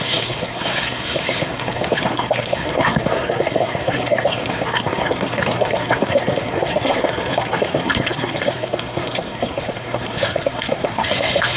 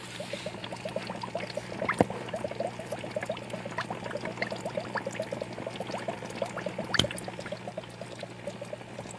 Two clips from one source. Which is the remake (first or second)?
first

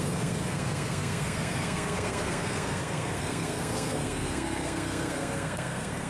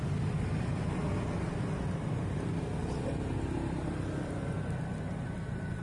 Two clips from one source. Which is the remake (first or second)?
first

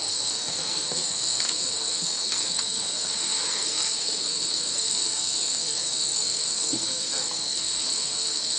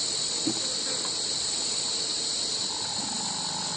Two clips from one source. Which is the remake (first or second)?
first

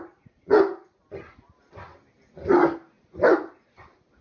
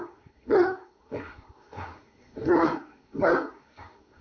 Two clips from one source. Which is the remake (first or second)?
second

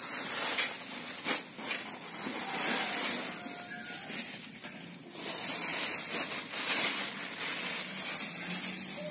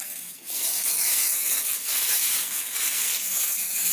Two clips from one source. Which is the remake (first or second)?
second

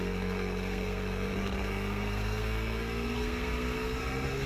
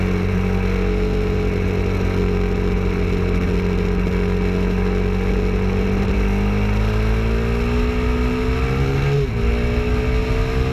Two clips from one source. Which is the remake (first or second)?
first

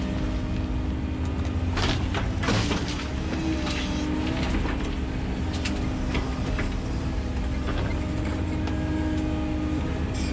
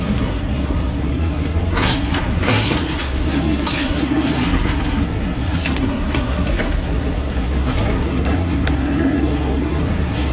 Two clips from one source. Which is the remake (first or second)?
second